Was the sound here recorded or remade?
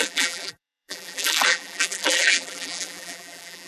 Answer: remade